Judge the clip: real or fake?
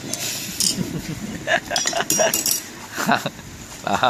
real